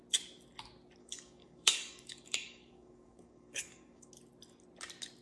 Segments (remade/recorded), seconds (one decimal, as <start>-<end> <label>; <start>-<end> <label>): 0.0-1.0 recorded; 1.0-4.1 remade; 4.1-5.2 recorded